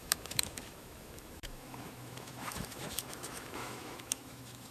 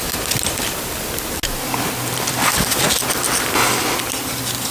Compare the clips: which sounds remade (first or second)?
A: first